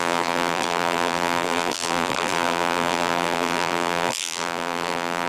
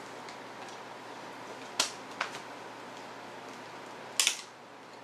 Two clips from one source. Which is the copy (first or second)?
first